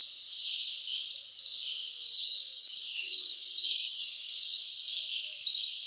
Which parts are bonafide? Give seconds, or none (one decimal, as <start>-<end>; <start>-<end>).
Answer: 0.0-2.0; 4.6-5.9